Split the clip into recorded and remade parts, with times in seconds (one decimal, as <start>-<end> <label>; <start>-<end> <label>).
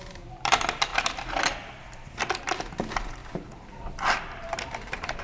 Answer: 0.0-5.2 remade